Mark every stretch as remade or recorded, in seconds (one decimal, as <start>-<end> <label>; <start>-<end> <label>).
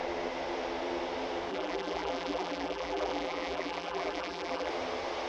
0.0-1.5 recorded; 1.5-4.7 remade; 4.7-5.3 recorded